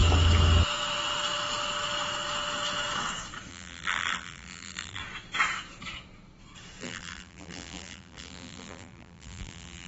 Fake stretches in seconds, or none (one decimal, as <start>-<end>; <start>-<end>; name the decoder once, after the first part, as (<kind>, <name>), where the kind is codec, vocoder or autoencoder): 3.5-5.0 (vocoder, BigVGAN v2); 6.8-9.9